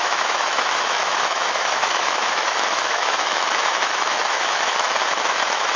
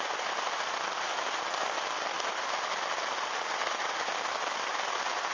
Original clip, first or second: second